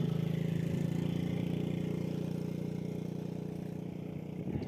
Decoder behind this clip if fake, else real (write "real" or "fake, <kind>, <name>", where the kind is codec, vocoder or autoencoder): real